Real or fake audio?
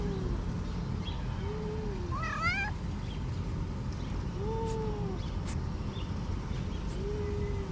real